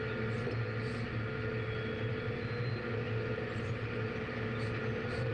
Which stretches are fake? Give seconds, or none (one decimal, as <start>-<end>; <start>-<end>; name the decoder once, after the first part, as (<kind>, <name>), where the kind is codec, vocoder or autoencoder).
none